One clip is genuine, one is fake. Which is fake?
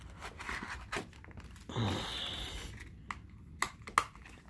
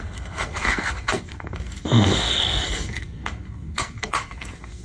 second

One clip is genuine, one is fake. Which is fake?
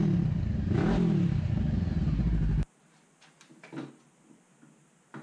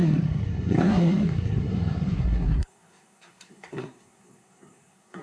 second